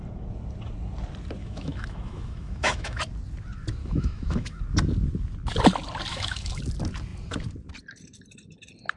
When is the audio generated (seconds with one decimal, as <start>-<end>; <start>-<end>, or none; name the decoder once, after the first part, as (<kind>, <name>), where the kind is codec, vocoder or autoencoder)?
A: 1.4-3.0 (autoencoder, DAC-VAE); 3.8-4.6; 6.1-6.6